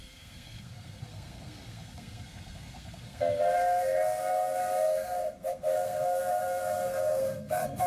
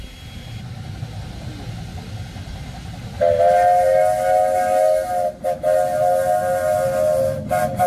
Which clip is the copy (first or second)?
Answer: first